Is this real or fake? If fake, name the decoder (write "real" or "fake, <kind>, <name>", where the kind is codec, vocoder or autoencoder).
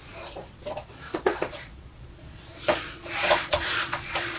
fake, vocoder, Vocos